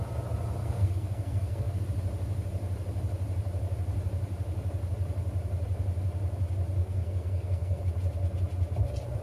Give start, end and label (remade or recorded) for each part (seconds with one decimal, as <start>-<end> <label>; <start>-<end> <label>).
0.0-0.6 recorded; 0.6-1.8 remade; 1.8-6.8 recorded; 6.8-7.8 remade; 7.8-9.2 recorded